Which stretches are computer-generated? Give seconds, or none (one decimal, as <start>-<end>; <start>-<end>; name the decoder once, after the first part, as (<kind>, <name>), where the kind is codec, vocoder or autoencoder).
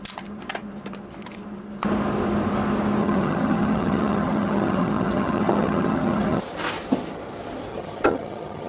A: 3.0-6.4 (vocoder, HiFi-GAN); 7.7-8.7